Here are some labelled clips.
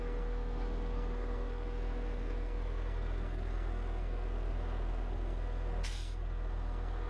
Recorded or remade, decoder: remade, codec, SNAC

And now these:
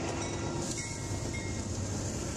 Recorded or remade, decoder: recorded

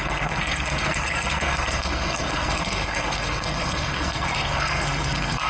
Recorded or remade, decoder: remade, codec, SNAC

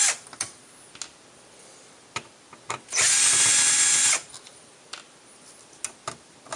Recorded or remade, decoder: recorded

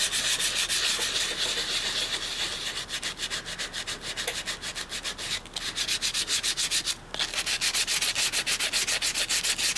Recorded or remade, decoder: recorded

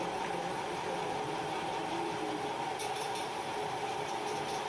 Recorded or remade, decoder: recorded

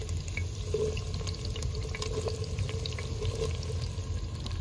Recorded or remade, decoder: recorded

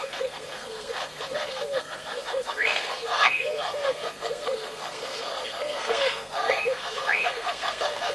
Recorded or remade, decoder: remade, codec, SNAC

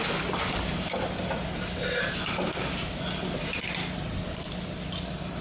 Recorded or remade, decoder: recorded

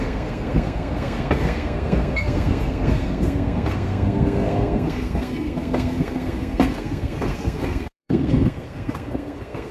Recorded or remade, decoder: remade, codec, SNAC